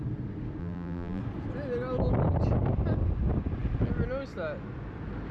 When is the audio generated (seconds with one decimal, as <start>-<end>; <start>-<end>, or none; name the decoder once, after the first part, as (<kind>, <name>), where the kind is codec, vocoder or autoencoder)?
0.6-1.2 (vocoder, BigVGAN v2)